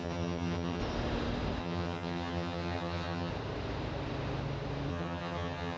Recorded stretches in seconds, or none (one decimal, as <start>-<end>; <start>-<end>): 0.8-1.6; 3.3-4.9